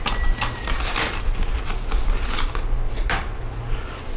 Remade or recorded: recorded